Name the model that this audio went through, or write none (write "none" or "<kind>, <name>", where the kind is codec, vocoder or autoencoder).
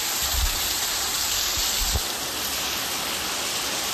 none